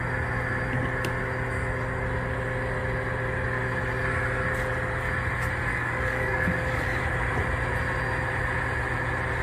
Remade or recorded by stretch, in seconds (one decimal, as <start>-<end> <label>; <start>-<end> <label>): 0.0-5.7 recorded; 5.7-7.0 remade; 7.0-9.4 recorded